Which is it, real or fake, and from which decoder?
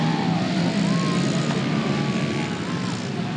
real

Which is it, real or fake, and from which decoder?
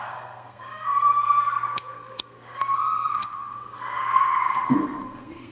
fake, codec, SNAC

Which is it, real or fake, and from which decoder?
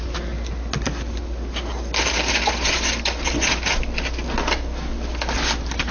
real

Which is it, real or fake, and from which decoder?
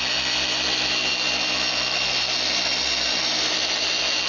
real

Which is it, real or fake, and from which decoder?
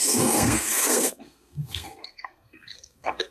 fake, codec, SNAC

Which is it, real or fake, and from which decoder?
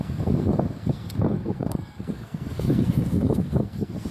fake, codec, SNAC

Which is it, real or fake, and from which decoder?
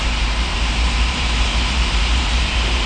fake, vocoder, BigVGAN v2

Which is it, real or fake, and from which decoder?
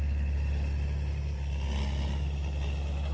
real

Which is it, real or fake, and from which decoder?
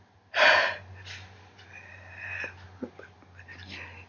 real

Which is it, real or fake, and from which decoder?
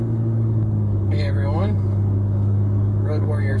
fake, codec, DAC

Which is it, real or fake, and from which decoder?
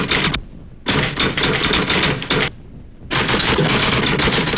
real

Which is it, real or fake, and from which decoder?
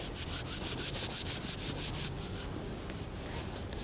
real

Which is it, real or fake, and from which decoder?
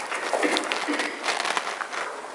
real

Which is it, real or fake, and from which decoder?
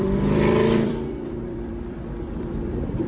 fake, vocoder, BigVGAN v2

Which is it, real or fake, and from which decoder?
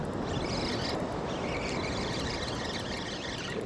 real